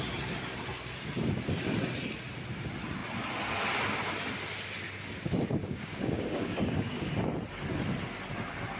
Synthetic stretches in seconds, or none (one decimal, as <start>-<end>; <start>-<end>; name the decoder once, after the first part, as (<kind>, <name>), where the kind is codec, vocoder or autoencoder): 5.6-7.1 (codec, DAC)